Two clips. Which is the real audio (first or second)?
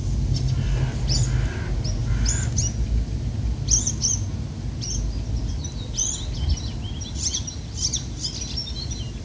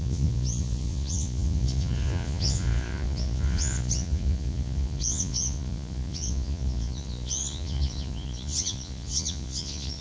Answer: first